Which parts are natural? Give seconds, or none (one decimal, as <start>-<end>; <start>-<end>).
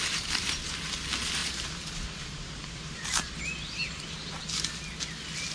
0.0-1.4; 3.4-5.5